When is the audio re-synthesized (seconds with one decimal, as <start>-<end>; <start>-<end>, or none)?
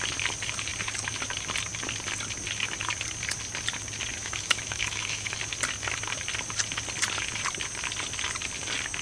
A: 4.2-5.4